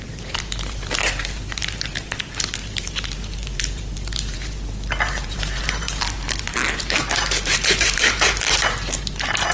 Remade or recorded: remade